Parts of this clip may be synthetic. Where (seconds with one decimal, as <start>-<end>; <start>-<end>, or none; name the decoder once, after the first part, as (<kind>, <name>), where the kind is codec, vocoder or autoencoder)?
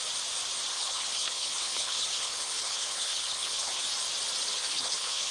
0.7-3.8 (codec, HILCodec); 4.5-5.3